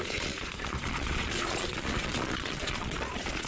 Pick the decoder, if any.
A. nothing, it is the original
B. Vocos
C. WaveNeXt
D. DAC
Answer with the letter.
B